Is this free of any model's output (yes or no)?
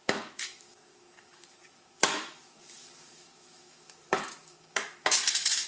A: no